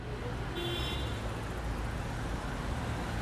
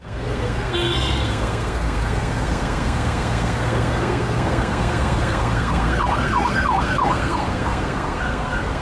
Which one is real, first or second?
first